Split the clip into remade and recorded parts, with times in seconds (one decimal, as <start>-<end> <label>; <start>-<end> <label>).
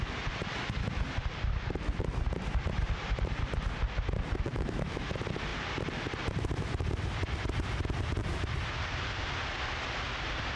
0.0-4.5 recorded; 4.5-5.1 remade; 5.1-10.6 recorded